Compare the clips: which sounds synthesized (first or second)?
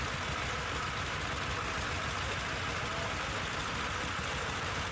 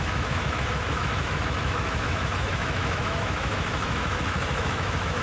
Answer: second